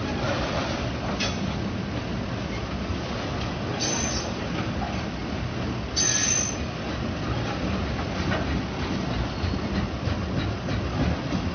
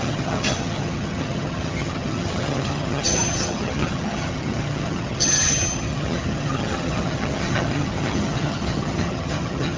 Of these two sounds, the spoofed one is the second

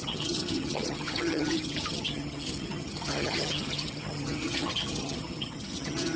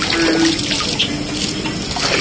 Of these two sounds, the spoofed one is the first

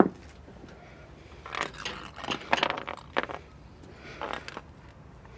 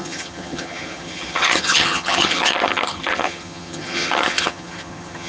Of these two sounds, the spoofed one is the second